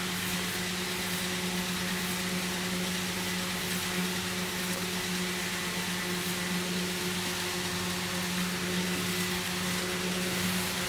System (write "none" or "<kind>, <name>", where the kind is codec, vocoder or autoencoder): none